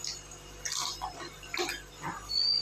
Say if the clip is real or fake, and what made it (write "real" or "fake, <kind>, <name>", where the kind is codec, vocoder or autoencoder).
real